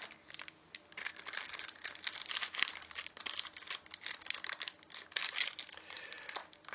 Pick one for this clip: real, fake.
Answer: real